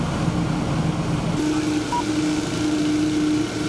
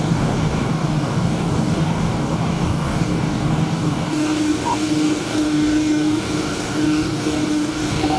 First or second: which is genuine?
first